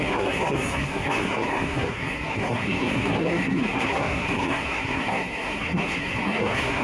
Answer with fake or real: fake